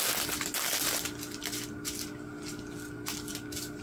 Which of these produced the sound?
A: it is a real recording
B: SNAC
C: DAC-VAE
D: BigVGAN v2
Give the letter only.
A